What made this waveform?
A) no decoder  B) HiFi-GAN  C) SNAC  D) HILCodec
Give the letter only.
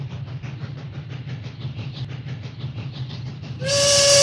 A